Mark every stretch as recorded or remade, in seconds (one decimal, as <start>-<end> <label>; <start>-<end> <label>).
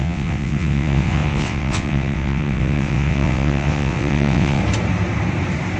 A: 0.0-4.6 remade; 4.6-5.8 recorded